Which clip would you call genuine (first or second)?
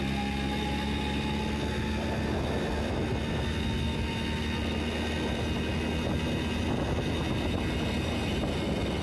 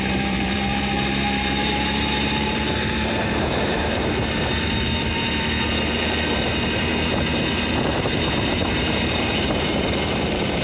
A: first